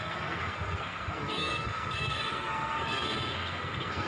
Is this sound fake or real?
fake